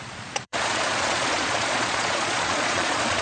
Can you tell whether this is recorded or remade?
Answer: remade